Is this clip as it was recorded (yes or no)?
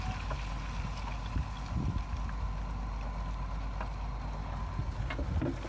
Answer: yes